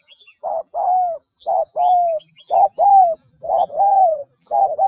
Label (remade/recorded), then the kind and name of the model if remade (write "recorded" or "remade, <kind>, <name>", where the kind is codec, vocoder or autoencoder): remade, vocoder, BigVGAN v2